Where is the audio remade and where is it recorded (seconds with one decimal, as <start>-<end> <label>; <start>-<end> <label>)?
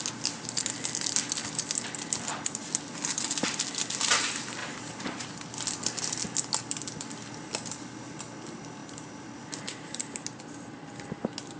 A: 0.0-4.6 recorded; 4.6-5.3 remade; 5.3-8.8 recorded; 8.8-10.4 remade; 10.4-11.6 recorded